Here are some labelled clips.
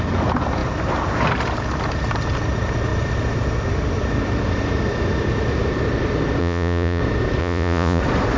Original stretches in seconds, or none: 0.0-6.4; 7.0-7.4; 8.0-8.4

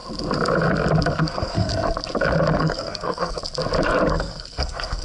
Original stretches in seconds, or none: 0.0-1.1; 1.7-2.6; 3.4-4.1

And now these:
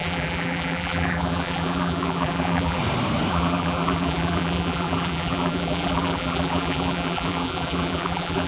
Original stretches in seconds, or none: 2.8-3.3

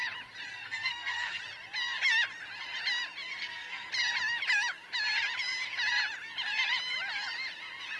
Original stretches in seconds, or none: 0.0-0.5; 1.4-3.4; 3.9-8.0